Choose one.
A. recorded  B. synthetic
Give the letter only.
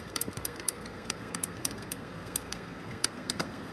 B